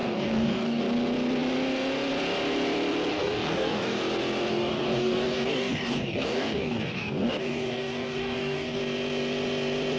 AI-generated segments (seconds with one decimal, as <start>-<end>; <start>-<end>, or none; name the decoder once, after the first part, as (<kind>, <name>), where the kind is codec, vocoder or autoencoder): 0.0-0.8 (codec, DAC); 3.1-4.0; 4.5-8.8